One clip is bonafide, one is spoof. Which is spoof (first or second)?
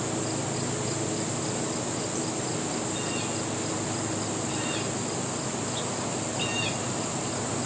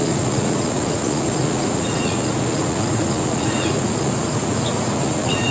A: second